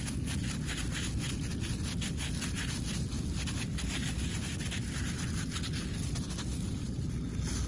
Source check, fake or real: real